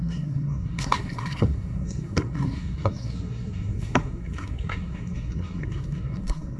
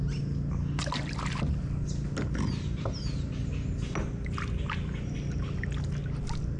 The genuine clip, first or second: second